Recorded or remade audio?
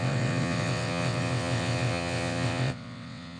remade